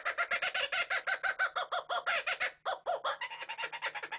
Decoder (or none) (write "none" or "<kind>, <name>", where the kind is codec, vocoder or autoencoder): none